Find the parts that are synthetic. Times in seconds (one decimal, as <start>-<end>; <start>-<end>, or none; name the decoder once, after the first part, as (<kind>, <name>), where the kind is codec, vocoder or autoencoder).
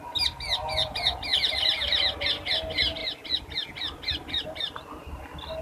none